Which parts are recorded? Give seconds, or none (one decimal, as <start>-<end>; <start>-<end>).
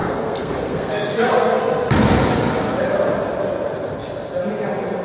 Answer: 1.6-5.0